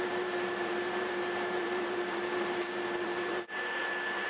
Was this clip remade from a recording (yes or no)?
yes